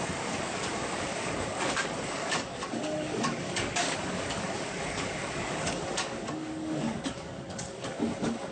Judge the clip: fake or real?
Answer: fake